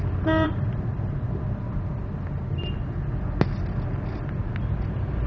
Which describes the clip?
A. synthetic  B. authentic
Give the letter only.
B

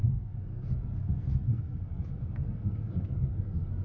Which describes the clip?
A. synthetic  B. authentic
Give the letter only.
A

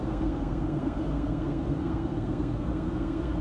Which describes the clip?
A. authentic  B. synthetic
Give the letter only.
B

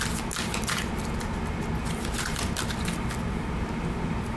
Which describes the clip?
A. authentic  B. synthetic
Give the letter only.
A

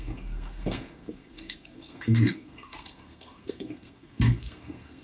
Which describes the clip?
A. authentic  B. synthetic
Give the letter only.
B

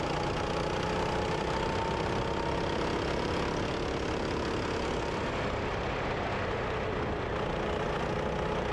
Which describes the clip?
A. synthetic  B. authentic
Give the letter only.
B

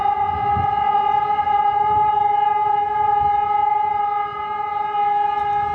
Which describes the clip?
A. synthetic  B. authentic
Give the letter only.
B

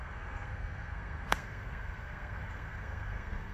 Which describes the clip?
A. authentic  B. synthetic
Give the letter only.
B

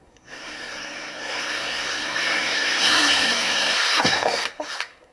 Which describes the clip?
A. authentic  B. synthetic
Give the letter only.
B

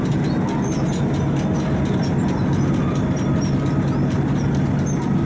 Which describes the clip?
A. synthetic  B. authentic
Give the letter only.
B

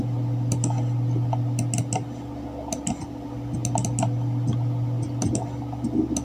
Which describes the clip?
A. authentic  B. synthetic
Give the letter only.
A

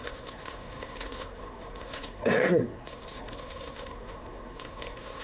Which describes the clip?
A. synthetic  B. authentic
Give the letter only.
A